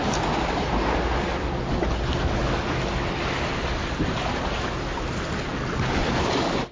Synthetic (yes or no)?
no